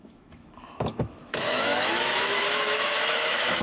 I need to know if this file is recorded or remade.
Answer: remade